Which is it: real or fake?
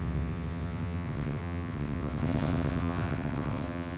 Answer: fake